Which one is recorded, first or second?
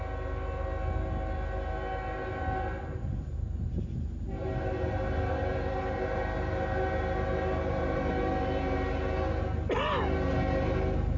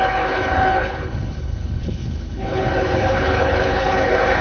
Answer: first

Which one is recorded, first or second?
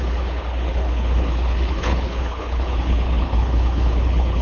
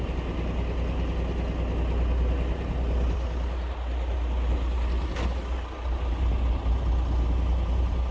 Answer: second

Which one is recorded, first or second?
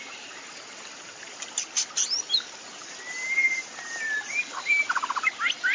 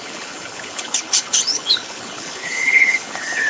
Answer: first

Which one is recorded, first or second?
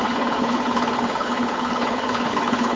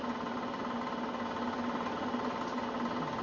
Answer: second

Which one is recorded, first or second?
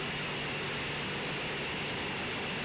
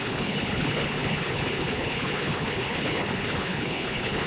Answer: first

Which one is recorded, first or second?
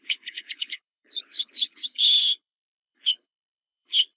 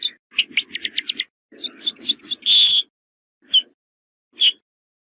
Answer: second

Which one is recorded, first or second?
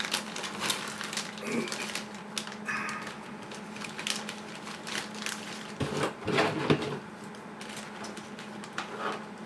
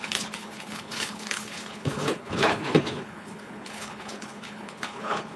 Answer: first